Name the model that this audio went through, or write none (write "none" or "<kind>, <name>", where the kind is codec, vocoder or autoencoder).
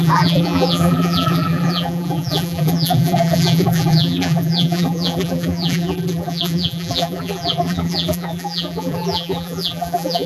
vocoder, BigVGAN v2